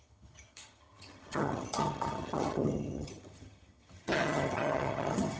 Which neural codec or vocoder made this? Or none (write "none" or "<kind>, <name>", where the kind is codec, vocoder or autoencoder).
vocoder, HiFi-GAN